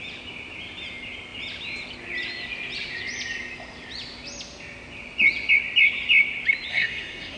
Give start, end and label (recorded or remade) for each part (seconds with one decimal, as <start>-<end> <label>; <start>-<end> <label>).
0.0-6.7 recorded; 6.7-7.4 remade